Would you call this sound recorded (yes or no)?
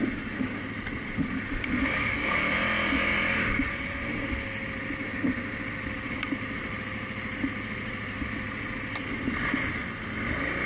yes